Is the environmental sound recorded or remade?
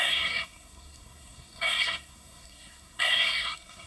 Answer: remade